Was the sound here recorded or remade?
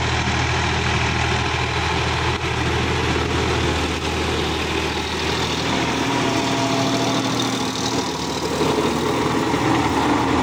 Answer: recorded